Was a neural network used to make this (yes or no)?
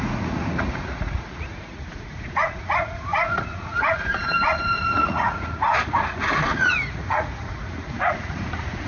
yes